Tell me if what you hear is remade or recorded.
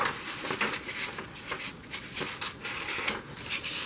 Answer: recorded